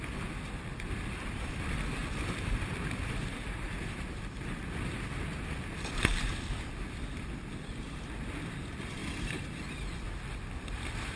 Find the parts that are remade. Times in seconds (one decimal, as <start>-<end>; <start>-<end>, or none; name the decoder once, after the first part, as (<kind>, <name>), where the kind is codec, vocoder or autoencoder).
9.0-9.6 (vocoder, BigVGAN v2)